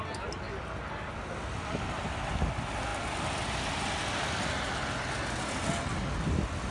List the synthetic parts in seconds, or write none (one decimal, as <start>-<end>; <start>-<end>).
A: none